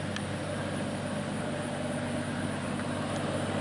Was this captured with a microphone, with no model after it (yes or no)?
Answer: yes